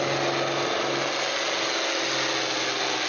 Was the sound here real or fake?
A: real